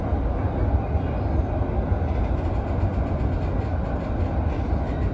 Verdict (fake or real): real